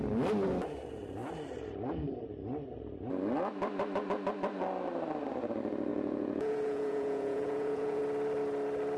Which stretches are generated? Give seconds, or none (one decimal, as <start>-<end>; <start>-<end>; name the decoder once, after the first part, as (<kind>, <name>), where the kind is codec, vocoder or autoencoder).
5.9-8.0 (vocoder, Vocos)